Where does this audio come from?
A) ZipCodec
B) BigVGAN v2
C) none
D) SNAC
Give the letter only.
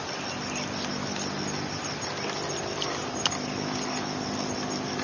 C